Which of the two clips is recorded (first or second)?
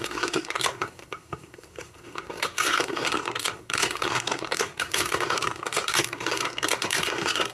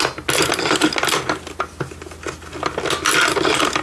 second